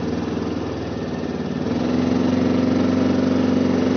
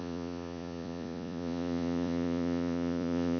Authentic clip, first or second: first